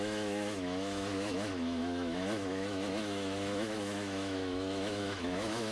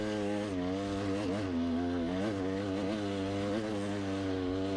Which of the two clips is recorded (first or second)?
second